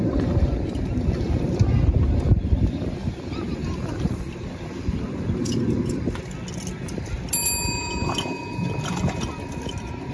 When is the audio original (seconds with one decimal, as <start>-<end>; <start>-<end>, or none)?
0.0-10.1